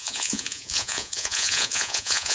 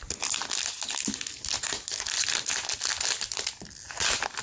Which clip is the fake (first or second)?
first